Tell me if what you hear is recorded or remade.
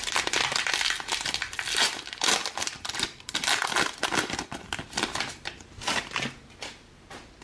recorded